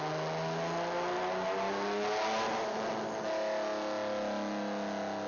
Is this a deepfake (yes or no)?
no